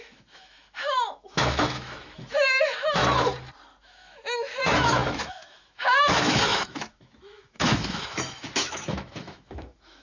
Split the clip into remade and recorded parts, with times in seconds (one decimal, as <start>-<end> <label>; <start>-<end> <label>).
0.0-3.0 remade; 3.0-3.8 recorded; 3.8-10.0 remade